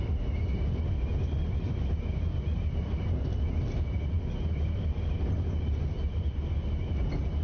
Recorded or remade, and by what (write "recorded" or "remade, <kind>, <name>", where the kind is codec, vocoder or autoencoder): recorded